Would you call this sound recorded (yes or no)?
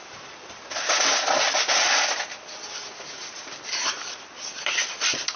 yes